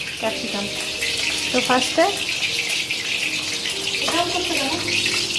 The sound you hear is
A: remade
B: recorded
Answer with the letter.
B